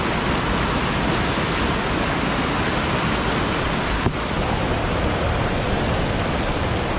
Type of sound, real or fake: real